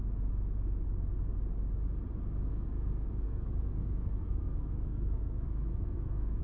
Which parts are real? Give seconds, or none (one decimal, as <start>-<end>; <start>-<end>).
0.0-2.5